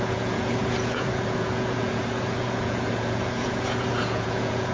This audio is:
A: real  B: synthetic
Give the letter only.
B